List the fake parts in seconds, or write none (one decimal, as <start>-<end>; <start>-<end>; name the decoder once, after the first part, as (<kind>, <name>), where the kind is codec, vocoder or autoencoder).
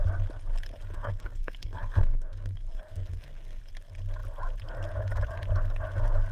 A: 0.9-3.6 (codec, SNAC)